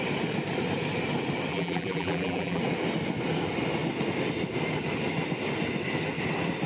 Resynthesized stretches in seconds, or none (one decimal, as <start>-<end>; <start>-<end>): 1.5-2.6